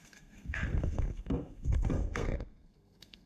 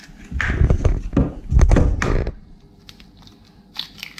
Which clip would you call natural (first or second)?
second